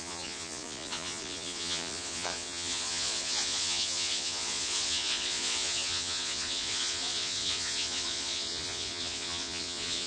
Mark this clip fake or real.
fake